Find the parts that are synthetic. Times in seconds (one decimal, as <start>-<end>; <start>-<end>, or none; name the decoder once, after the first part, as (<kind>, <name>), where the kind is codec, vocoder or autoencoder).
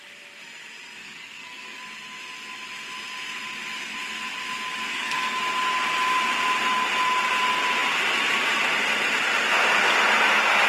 1.0-1.8 (codec, SNAC); 4.9-5.4